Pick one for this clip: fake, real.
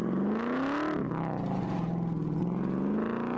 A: real